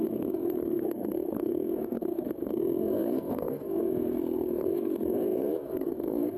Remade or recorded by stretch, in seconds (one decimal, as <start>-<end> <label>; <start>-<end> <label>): 0.0-6.4 remade